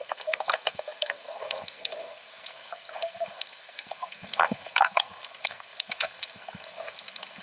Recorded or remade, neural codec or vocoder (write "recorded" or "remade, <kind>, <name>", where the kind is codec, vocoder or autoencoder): remade, codec, SNAC